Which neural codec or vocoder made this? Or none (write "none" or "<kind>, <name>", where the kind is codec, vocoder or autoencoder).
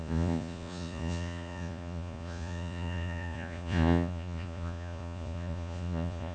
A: vocoder, Vocos